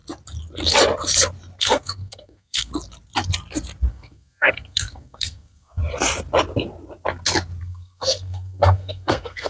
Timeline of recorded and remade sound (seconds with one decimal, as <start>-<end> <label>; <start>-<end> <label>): 0.0-1.6 recorded; 1.6-2.7 remade; 2.7-3.9 recorded; 3.9-5.8 remade; 5.8-7.6 recorded; 7.6-9.5 remade